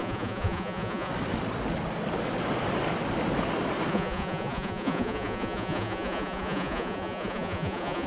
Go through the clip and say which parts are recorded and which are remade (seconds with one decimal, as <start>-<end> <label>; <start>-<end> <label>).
0.0-1.1 remade; 1.1-3.9 recorded; 3.9-8.1 remade

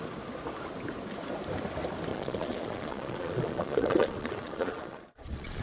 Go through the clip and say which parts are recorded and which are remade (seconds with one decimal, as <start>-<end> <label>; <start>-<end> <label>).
0.0-2.1 recorded; 2.1-5.6 remade

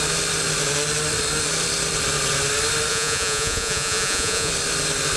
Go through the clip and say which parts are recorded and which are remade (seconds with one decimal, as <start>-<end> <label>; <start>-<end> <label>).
0.0-2.9 recorded; 2.9-4.5 remade; 4.5-5.2 recorded

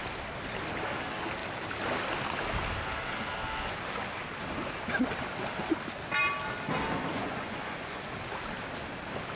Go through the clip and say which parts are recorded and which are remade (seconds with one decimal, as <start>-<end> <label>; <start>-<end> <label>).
0.0-7.1 recorded; 7.1-8.0 remade; 8.0-9.4 recorded

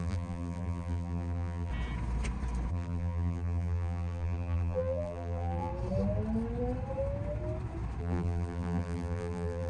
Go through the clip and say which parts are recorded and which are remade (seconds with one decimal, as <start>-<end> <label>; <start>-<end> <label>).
0.0-1.7 remade; 1.7-2.7 recorded; 2.7-5.7 remade; 5.7-8.0 recorded; 8.0-9.7 remade

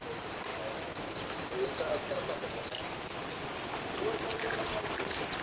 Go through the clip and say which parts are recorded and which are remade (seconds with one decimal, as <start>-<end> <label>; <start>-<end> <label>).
0.0-5.4 recorded